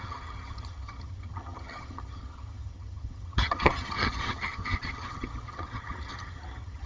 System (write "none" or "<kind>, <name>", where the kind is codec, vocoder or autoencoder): vocoder, HiFi-GAN